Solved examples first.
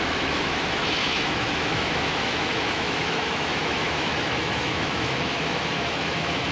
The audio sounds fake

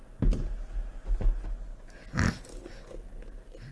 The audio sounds real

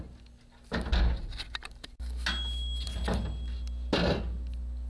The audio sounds real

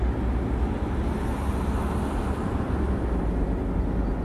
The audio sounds real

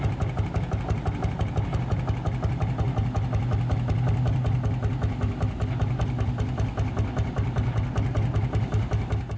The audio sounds real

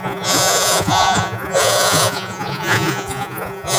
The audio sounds fake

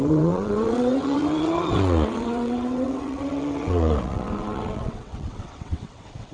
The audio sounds fake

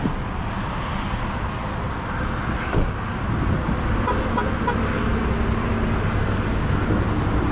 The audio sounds real